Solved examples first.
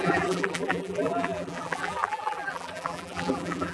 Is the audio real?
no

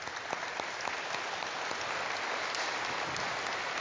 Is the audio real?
yes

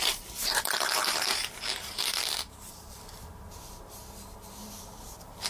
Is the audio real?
no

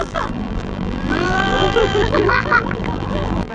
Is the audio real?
no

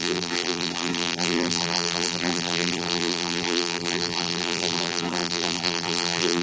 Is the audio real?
no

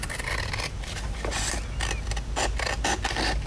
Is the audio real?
yes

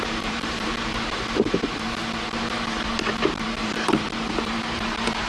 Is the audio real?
no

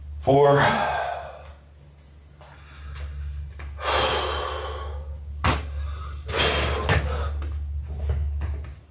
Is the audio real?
yes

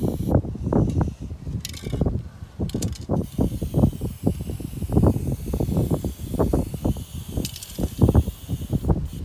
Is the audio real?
yes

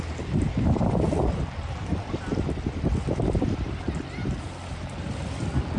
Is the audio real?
no